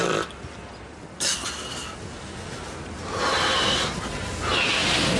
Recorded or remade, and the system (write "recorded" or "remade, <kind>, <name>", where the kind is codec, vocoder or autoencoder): recorded